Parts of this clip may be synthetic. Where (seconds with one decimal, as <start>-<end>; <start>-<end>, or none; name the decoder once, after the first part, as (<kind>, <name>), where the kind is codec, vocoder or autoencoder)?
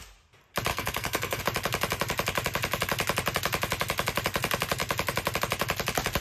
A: 0.7-1.4 (codec, SNAC)